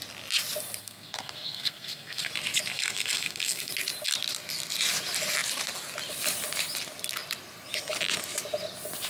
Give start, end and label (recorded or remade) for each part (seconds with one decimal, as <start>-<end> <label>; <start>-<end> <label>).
0.0-0.8 recorded; 0.8-2.3 remade; 2.3-2.7 recorded; 2.7-3.7 remade; 3.7-9.1 recorded